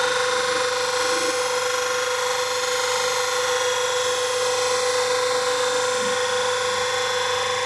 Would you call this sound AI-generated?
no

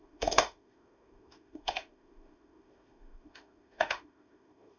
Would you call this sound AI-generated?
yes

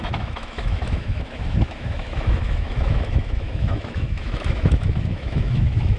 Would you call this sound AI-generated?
yes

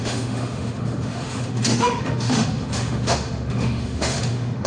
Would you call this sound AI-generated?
yes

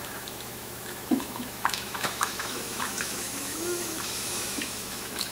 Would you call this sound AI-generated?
yes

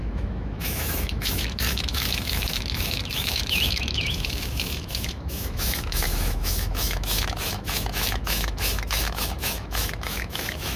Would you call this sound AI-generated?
yes